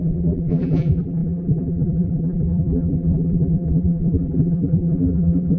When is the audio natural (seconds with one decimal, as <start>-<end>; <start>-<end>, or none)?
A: none